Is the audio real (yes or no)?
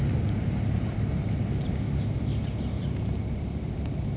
yes